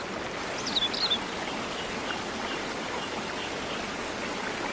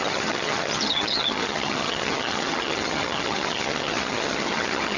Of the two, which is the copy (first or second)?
second